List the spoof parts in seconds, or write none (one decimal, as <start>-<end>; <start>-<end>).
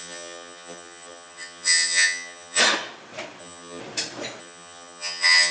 0.0-2.6; 3.4-3.8; 4.4-5.5